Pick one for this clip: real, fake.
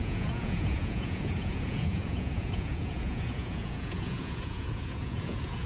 fake